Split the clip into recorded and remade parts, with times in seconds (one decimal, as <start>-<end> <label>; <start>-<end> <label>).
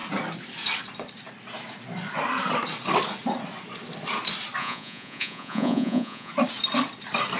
0.0-4.6 recorded; 4.6-6.3 remade; 6.3-7.4 recorded